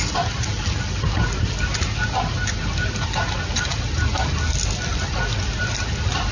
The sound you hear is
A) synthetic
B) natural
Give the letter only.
B